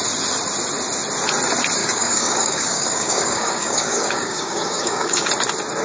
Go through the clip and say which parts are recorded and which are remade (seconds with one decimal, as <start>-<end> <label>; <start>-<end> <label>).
0.0-1.8 recorded; 1.8-5.3 remade; 5.3-5.8 recorded